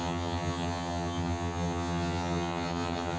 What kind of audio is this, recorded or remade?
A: remade